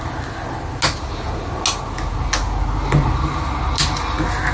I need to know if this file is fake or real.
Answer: real